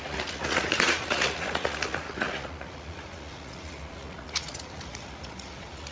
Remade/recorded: remade